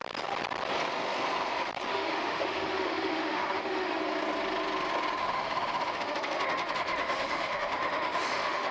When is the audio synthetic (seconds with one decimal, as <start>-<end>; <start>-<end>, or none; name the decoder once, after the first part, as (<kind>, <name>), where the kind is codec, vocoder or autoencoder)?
1.9-4.0 (autoencoder, DAC-VAE); 5.2-8.7